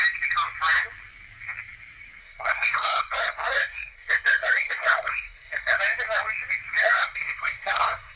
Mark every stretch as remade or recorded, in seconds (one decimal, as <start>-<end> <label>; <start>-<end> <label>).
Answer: 0.0-2.2 recorded; 2.2-5.8 remade; 5.8-6.8 recorded; 6.8-8.2 remade